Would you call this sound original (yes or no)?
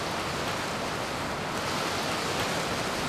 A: yes